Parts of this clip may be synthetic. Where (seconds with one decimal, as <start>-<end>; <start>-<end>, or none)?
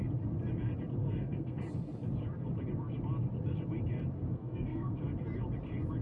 1.0-1.6; 4.3-5.0